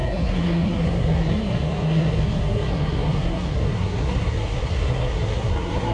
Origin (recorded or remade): remade